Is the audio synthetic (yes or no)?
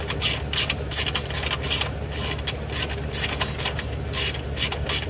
no